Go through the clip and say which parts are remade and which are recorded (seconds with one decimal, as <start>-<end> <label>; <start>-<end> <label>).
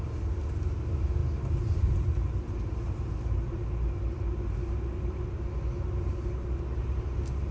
0.0-7.5 recorded